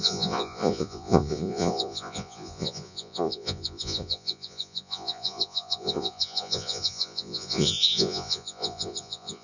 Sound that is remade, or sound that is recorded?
remade